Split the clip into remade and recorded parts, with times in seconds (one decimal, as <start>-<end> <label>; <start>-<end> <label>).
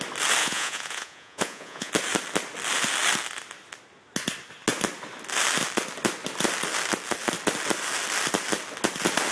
0.0-0.4 recorded; 0.4-1.9 remade; 1.9-9.3 recorded